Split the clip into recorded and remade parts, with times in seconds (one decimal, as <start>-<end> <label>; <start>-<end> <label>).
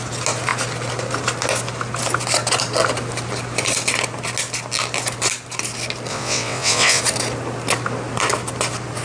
0.0-6.1 recorded; 6.1-7.0 remade; 7.0-9.0 recorded